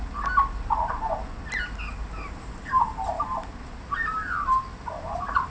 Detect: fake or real real